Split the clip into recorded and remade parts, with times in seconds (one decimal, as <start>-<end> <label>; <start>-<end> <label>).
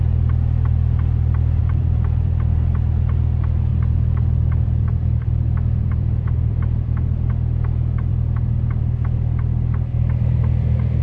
0.0-1.6 recorded; 1.6-2.7 remade; 2.7-3.7 recorded; 3.7-7.3 remade; 7.3-11.0 recorded